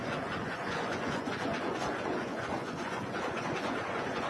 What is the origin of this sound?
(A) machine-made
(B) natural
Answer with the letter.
A